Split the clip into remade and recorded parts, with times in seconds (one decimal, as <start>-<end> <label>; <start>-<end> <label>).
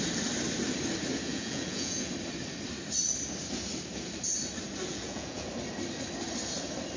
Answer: 0.0-1.3 recorded; 1.3-2.1 remade; 2.1-4.9 recorded; 4.9-5.5 remade; 5.5-7.0 recorded